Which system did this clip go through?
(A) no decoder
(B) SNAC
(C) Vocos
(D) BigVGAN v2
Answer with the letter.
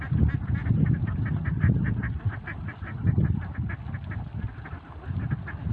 A